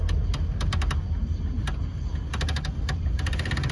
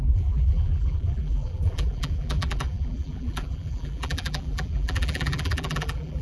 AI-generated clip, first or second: second